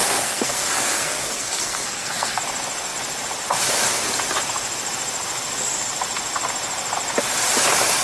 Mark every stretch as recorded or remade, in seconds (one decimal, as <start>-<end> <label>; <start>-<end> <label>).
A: 0.0-2.4 remade; 2.4-8.0 recorded